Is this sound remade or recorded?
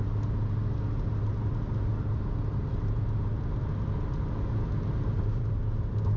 recorded